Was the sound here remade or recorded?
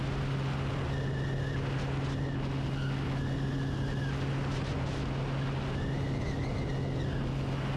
recorded